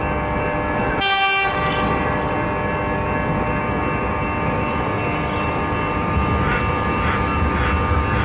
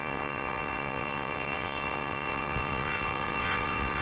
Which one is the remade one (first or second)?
second